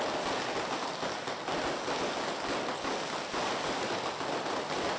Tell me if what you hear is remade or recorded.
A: recorded